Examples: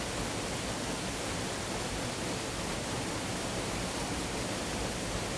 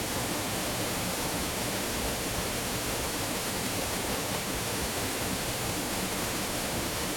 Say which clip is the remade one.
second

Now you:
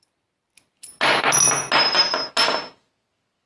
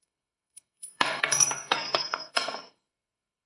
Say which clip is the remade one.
second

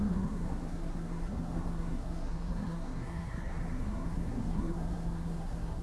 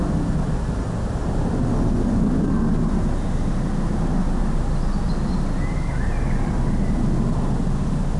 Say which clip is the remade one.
first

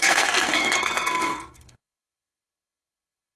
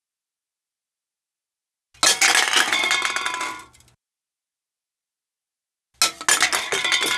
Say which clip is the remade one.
first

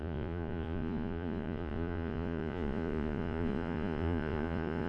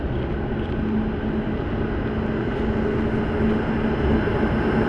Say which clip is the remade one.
first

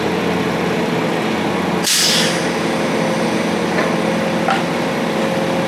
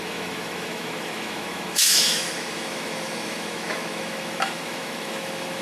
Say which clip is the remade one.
second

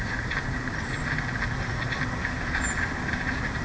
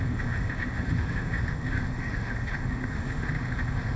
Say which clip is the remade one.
second